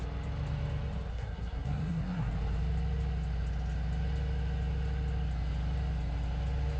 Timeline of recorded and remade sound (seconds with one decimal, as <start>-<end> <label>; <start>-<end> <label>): 0.0-1.1 recorded; 1.1-2.3 remade; 2.3-6.8 recorded